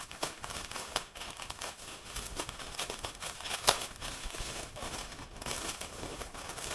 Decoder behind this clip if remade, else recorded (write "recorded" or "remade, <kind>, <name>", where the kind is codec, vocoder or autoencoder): remade, autoencoder, DAC-VAE